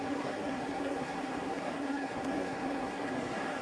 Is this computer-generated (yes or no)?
yes